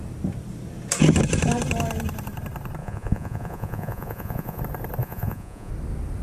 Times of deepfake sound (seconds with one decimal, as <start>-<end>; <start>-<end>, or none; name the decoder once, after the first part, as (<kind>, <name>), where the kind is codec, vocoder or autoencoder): 2.8-4.6 (vocoder, Vocos); 5.0-5.7